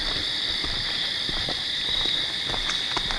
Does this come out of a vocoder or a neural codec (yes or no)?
no